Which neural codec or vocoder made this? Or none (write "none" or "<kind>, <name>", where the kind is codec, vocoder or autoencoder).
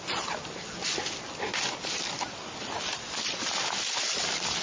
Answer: none